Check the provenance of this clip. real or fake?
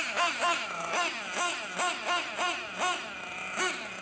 real